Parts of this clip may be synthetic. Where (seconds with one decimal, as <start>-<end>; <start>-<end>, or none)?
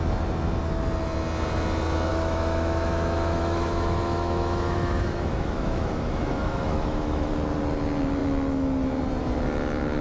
2.1-7.3